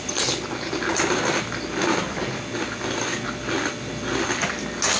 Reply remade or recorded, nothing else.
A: recorded